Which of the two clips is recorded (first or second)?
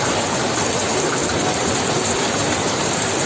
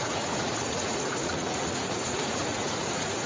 first